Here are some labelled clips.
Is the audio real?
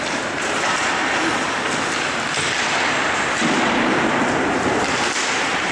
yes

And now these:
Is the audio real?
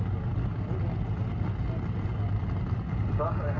yes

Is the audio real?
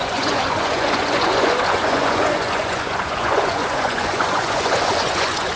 no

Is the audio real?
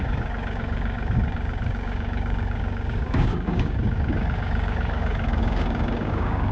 no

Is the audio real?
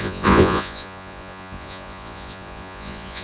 no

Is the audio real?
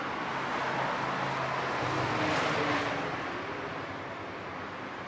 yes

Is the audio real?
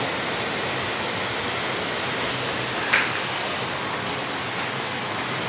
yes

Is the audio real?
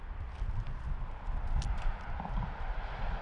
yes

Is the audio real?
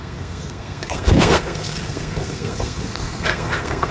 no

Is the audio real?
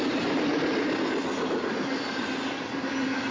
yes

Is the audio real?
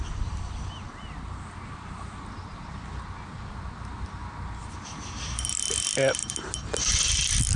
yes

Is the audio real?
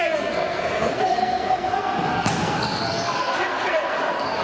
no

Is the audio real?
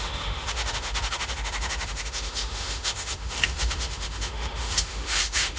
no